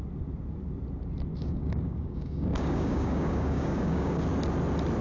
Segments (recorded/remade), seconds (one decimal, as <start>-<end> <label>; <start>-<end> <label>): 0.0-1.3 recorded; 1.3-4.2 remade; 4.2-5.0 recorded